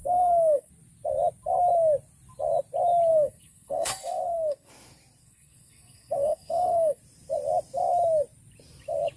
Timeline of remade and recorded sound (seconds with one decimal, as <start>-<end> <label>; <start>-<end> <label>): 0.0-0.7 remade; 0.7-3.1 recorded; 3.1-4.7 remade; 4.7-5.2 recorded; 5.2-7.0 remade; 7.0-9.2 recorded